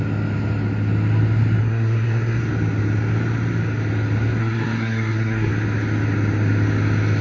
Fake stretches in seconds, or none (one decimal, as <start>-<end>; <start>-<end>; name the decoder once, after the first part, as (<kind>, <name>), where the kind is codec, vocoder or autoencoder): 1.6-2.4 (codec, SNAC); 4.4-5.5